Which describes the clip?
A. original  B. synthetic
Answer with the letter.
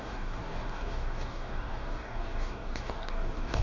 B